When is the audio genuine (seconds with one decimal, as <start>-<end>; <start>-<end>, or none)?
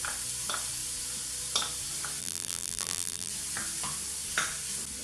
0.0-2.2; 3.3-5.0